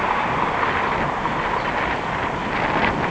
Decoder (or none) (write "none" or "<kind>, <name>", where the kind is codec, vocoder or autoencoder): none